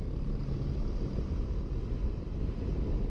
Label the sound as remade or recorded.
recorded